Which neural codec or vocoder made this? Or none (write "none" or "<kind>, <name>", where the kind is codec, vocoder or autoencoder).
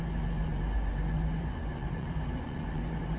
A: vocoder, Vocos